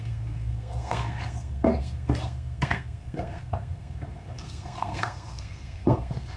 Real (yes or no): no